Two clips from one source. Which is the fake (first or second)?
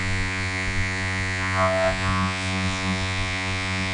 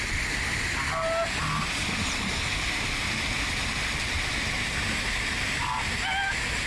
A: first